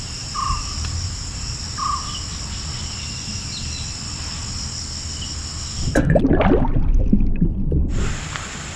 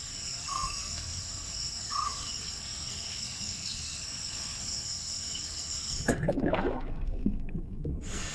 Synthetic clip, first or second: second